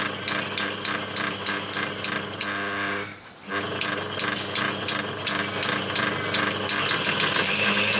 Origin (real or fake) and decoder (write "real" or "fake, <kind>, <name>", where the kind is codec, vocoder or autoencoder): real